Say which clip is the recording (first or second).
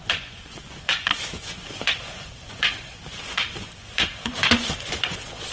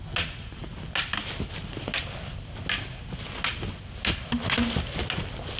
second